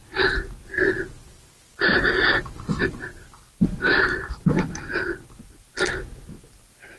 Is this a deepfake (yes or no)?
no